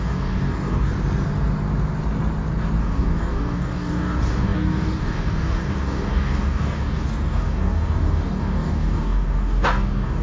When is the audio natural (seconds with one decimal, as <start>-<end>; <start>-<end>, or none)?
0.9-2.8